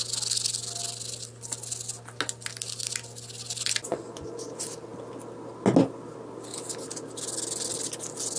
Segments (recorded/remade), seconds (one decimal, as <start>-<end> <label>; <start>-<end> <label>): 0.0-3.9 recorded; 3.9-4.5 remade; 4.5-8.4 recorded